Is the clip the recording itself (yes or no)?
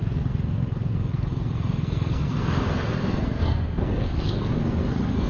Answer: no